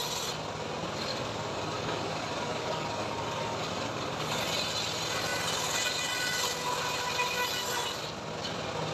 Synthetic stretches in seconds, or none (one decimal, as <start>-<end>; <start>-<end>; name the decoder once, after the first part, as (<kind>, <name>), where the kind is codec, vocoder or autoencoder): 1.1-4.4 (codec, DAC)